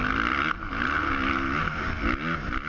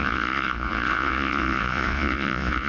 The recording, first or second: first